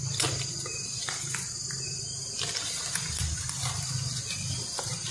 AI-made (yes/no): no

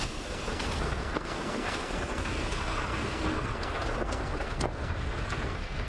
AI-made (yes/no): yes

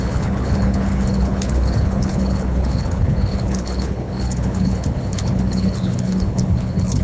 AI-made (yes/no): yes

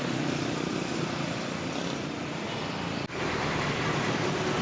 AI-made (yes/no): no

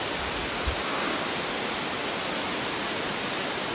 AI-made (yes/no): no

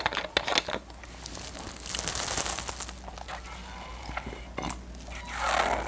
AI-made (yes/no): no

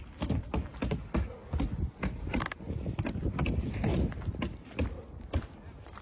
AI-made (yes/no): no